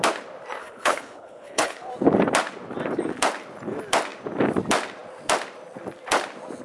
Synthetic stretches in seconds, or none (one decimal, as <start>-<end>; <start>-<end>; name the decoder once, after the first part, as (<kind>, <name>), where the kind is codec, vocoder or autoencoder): 0.6-1.9 (codec, HILCodec)